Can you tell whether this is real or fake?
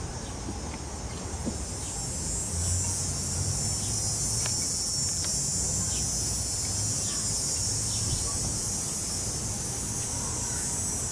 real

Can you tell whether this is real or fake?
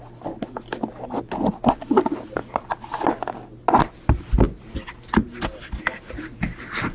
real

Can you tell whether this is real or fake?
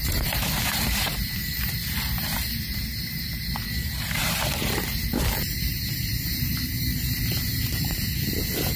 fake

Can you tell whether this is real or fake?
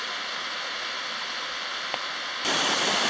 real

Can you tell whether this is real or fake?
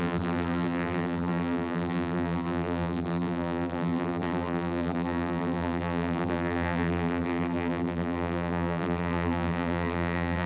fake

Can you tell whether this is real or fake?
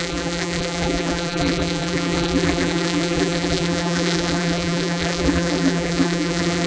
fake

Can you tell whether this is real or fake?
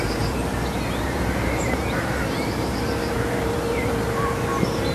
fake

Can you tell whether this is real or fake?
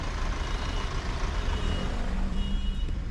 fake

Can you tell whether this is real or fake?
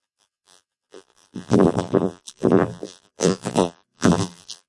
fake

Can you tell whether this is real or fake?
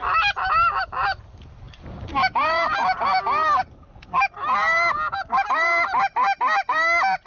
real